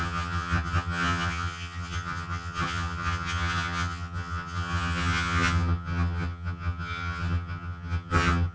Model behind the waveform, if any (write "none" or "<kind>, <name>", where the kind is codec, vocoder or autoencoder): vocoder, HiFi-GAN